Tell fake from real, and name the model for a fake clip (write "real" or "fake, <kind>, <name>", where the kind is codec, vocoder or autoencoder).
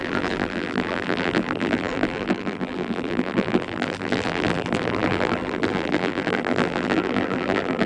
fake, vocoder, BigVGAN v2